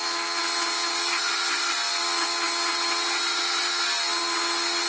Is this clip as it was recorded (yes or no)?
yes